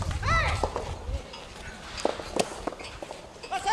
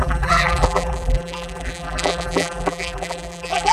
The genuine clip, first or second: first